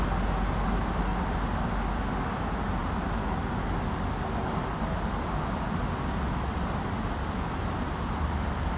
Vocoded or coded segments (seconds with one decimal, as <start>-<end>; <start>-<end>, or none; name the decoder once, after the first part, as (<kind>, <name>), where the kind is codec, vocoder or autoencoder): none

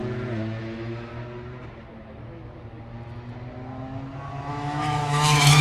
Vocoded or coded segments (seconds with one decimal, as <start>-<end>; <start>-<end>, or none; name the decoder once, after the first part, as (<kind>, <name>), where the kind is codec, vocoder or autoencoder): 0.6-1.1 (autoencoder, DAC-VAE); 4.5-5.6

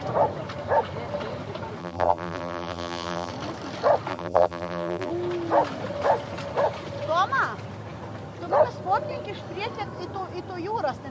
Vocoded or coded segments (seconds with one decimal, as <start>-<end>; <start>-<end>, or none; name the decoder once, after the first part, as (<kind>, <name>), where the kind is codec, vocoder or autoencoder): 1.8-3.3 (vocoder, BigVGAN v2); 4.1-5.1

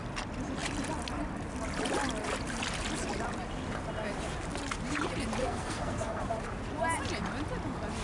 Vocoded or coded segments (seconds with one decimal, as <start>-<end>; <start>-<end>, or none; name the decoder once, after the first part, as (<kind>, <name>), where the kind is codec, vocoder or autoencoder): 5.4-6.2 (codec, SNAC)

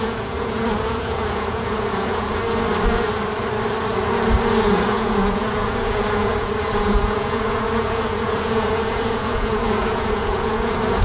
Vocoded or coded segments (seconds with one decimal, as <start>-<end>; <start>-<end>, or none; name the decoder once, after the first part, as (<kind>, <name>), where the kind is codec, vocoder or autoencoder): 0.0-2.4 (vocoder, Vocos); 4.7-11.0